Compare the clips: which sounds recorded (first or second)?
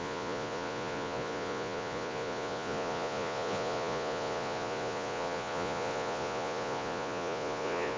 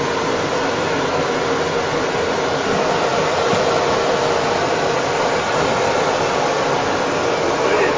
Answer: second